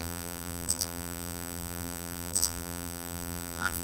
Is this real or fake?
fake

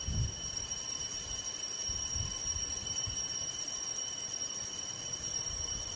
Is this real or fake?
fake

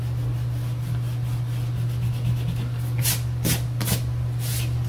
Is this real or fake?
real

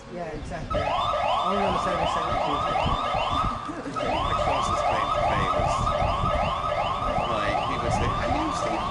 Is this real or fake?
real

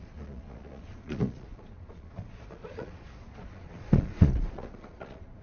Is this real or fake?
fake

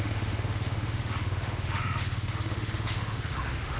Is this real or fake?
fake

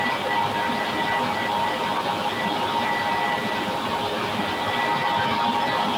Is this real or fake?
real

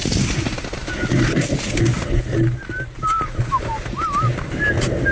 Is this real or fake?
real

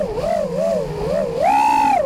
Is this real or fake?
real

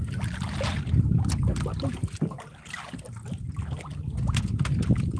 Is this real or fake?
real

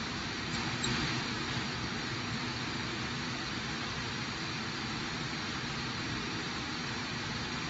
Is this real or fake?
fake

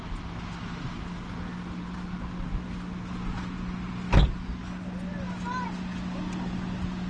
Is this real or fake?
real